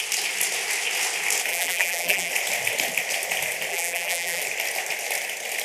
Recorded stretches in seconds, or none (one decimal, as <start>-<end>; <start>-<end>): 0.0-1.5; 2.3-3.7; 4.4-5.6

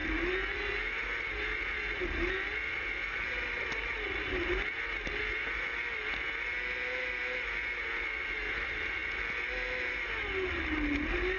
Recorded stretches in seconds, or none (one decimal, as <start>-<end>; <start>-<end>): 0.0-11.4

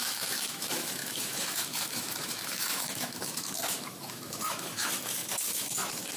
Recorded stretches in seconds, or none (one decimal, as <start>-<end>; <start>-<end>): none

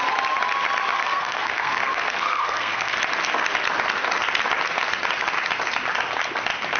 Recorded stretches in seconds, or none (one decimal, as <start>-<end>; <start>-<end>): 0.0-0.9; 3.0-6.8

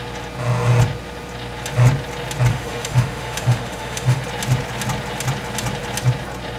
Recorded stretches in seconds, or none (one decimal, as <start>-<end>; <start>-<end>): 0.0-2.5; 4.2-6.6

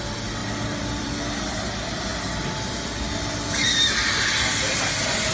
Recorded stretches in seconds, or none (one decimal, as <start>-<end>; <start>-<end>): 0.0-0.4; 1.3-5.3